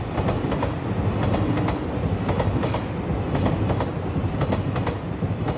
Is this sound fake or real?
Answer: real